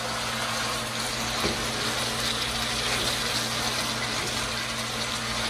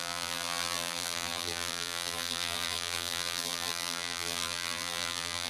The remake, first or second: second